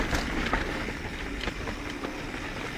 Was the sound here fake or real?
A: real